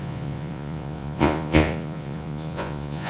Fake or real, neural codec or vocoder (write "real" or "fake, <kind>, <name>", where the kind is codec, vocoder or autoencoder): fake, vocoder, Vocos